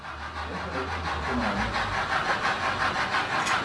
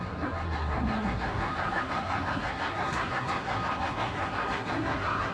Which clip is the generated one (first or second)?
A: second